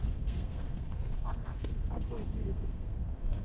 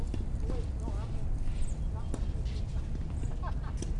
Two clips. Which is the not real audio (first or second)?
first